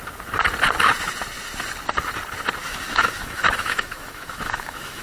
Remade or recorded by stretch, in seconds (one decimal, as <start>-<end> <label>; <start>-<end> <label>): 0.0-2.6 recorded; 2.6-5.0 remade